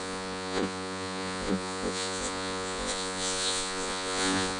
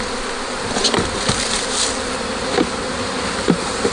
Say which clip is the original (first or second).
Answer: second